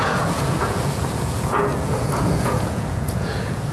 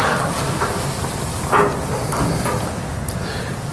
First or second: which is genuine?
second